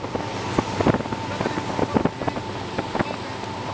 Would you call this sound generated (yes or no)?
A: no